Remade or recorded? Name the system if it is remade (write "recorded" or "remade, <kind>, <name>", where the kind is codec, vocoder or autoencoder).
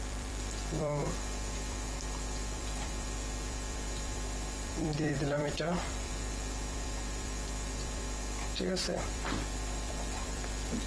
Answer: remade, vocoder, BigVGAN v2